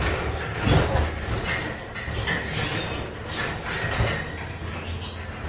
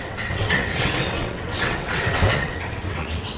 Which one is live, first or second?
first